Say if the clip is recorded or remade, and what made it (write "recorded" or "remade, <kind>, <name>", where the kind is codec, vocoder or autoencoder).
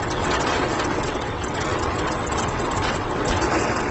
remade, vocoder, WaveNeXt